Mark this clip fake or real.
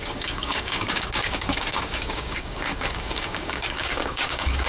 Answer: fake